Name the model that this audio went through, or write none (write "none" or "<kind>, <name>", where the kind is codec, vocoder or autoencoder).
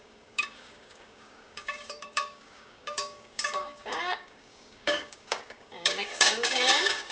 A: codec, DAC